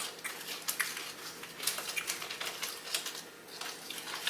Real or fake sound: real